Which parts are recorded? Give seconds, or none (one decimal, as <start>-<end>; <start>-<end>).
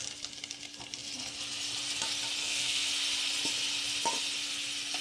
0.0-2.4; 2.9-5.0